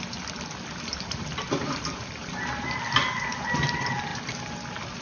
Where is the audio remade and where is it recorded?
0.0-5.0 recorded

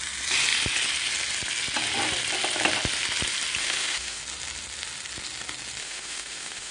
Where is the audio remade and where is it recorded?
0.0-3.6 recorded; 3.6-4.2 remade; 4.2-5.8 recorded; 5.8-6.7 remade

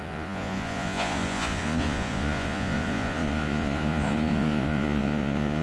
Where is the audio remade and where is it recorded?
0.0-5.6 remade

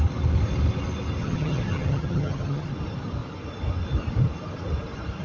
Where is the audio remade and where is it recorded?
0.0-1.2 recorded; 1.2-2.7 remade; 2.7-5.2 recorded

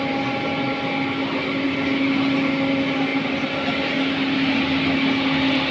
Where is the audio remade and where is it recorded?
0.0-5.7 recorded

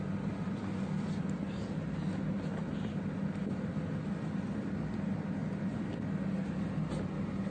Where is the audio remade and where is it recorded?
0.0-7.5 recorded